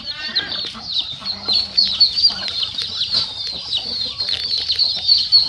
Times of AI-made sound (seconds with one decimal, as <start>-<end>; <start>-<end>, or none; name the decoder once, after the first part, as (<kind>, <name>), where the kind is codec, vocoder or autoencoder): 0.0-1.2 (vocoder, BigVGAN v2); 2.0-5.5